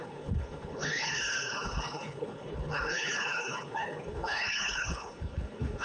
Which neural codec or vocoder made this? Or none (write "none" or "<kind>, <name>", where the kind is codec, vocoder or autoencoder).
codec, HILCodec